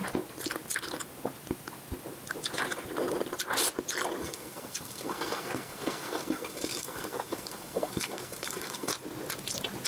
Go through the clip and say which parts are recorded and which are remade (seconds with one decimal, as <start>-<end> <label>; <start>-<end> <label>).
0.0-4.2 recorded; 4.2-8.9 remade; 8.9-9.9 recorded

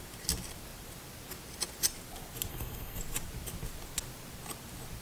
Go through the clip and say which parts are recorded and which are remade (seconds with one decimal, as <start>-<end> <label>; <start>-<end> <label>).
0.0-2.5 recorded; 2.5-3.0 remade; 3.0-5.0 recorded

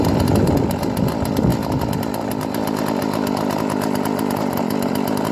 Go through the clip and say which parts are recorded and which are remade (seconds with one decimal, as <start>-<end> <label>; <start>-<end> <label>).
0.0-5.3 recorded